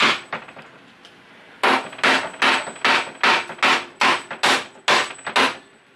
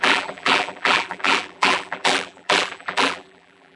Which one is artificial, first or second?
second